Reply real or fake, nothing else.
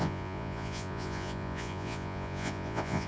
fake